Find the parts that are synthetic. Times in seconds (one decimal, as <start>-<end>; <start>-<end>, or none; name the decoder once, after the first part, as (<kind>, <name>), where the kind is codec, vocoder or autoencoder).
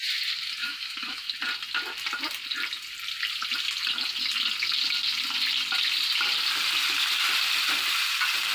0.6-1.3 (autoencoder, DAC-VAE)